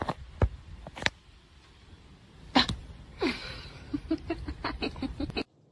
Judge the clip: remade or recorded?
remade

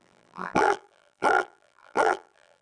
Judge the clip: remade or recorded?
remade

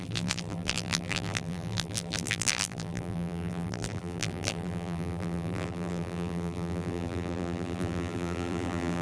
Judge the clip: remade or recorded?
remade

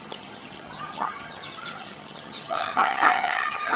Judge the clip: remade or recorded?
remade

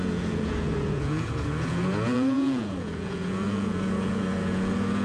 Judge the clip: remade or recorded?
remade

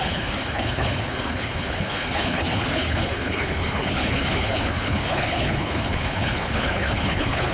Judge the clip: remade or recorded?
remade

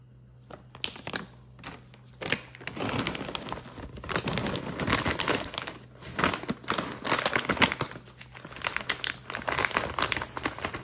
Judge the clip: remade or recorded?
recorded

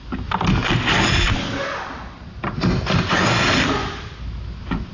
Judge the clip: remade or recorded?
recorded